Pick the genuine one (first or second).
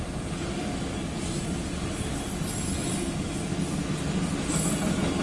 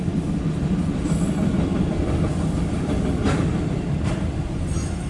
first